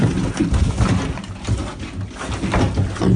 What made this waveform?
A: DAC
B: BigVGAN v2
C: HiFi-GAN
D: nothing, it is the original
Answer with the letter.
D